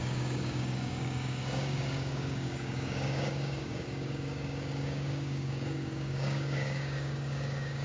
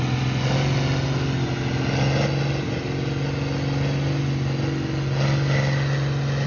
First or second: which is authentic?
second